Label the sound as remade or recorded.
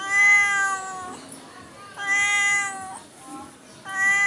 recorded